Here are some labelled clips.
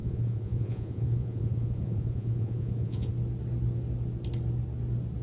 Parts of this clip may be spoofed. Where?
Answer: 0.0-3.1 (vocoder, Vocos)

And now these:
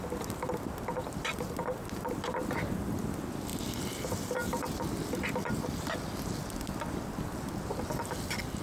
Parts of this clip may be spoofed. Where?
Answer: none

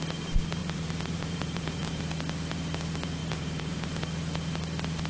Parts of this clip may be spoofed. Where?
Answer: 0.6-2.0 (vocoder, BigVGAN v2); 3.2-3.9

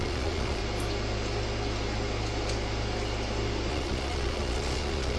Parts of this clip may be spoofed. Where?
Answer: 0.0-0.6 (vocoder, Vocos); 3.7-5.2

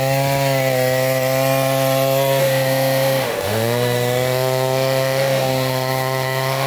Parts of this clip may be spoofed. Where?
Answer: 2.4-6.7 (autoencoder, DAC-VAE)

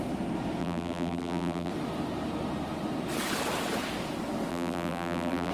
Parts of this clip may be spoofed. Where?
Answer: 0.6-1.7 (vocoder, BigVGAN v2); 4.5-5.5

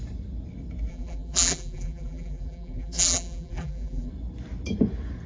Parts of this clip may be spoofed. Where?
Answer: 0.9-4.1 (vocoder, BigVGAN v2)

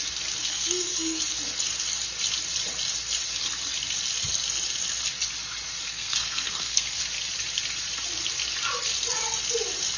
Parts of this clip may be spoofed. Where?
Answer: 0.4-1.2 (codec, SNAC); 5.9-7.0